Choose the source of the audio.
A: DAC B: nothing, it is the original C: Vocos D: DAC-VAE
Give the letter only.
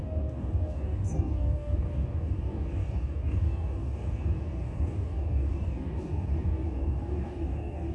A